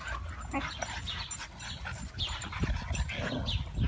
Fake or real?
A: real